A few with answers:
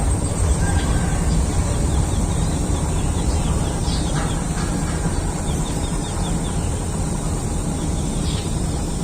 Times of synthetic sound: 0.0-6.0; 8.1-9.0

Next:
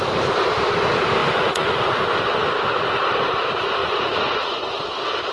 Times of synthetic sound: 1.2-1.8; 3.8-4.7

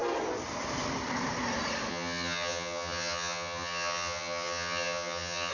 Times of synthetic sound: 1.9-5.5

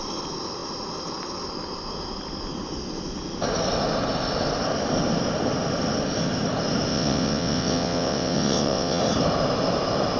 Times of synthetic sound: 6.9-9.0

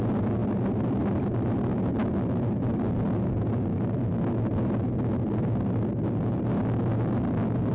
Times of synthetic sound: none

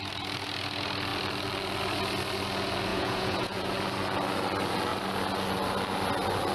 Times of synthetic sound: 2.9-3.7